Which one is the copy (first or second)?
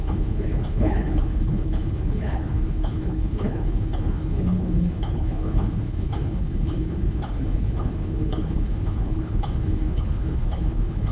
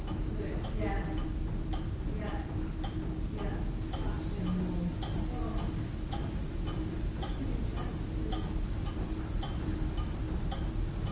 first